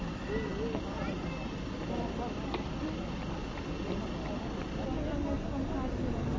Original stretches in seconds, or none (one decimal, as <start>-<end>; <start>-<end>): 0.0-6.4